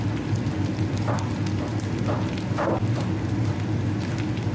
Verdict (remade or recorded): recorded